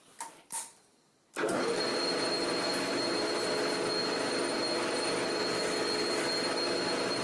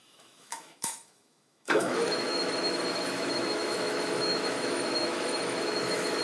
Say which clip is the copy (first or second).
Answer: second